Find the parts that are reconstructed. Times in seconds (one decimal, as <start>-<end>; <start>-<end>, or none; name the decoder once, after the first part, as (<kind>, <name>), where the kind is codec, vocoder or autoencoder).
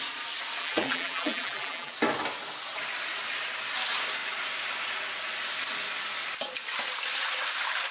0.6-1.9 (vocoder, BigVGAN v2)